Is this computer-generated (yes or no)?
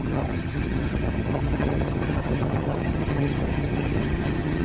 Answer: yes